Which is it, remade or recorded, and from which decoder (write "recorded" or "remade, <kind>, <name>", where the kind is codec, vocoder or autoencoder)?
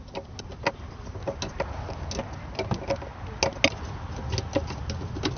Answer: recorded